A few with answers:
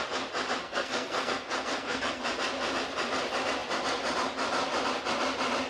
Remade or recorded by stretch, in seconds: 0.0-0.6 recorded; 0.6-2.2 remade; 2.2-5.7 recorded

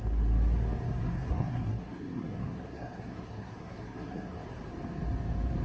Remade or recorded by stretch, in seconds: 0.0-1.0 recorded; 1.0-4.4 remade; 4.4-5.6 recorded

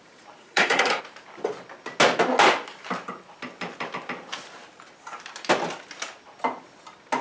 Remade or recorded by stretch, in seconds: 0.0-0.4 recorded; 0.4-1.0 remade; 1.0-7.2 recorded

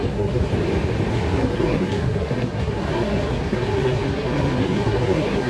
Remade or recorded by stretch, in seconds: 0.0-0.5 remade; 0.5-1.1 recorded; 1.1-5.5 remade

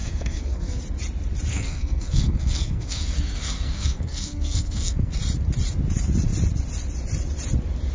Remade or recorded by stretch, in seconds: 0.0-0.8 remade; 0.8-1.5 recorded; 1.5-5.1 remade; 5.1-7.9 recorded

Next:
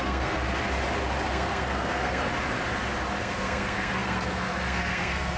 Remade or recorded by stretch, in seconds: 0.0-0.4 remade; 0.4-1.3 recorded; 1.3-2.3 remade; 2.3-3.2 recorded; 3.2-5.4 remade

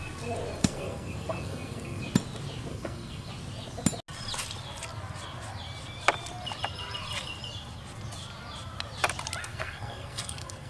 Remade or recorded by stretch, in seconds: 0.0-0.6 recorded; 0.6-2.0 remade; 2.0-2.7 recorded; 2.7-3.3 remade; 3.3-9.4 recorded; 9.4-10.7 remade

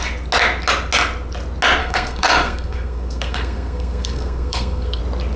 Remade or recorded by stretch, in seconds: 0.0-1.8 recorded; 1.8-5.0 remade; 5.0-5.4 recorded